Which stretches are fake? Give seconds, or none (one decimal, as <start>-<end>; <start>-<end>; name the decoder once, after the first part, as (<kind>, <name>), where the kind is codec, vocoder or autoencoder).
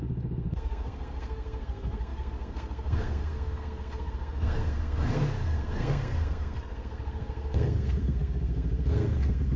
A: 0.0-9.6 (codec, SNAC)